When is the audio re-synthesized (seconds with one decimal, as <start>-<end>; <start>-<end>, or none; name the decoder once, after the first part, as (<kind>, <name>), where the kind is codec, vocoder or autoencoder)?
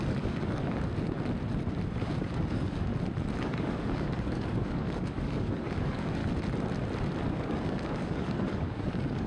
0.0-0.9 (codec, DAC); 2.0-2.9; 3.4-6.2; 7.3-9.3